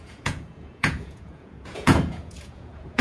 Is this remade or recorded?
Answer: remade